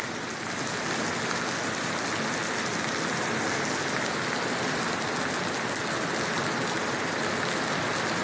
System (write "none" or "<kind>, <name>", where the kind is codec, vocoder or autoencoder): none